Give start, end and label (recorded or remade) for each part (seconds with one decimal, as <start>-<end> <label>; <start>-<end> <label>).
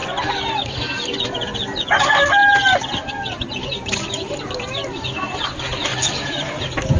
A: 0.0-2.4 recorded; 2.4-5.4 remade; 5.4-5.9 recorded; 5.9-7.0 remade